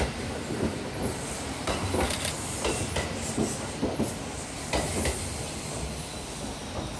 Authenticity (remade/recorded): recorded